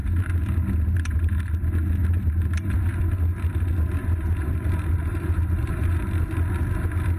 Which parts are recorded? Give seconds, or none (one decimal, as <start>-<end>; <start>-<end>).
1.4-2.0; 2.7-4.0; 6.0-7.2